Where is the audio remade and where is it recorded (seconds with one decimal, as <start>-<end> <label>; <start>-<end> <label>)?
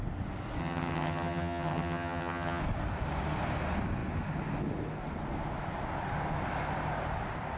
0.0-0.6 recorded; 0.6-2.6 remade; 2.6-7.6 recorded